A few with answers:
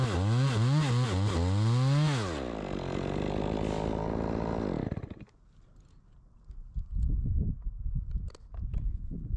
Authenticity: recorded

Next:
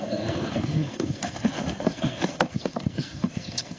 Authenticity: remade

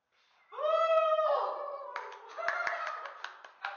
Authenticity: recorded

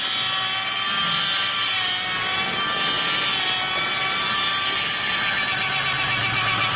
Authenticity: recorded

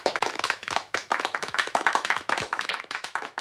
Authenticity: remade